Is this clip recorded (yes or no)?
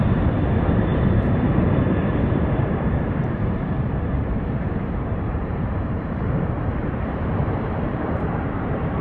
no